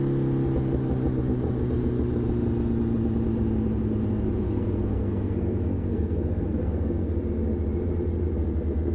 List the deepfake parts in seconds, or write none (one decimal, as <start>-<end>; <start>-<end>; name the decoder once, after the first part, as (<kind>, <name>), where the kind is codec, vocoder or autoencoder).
4.4-7.2 (codec, SNAC)